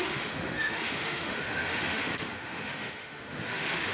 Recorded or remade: remade